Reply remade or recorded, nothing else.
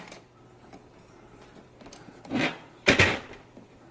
remade